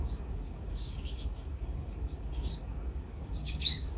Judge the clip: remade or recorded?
remade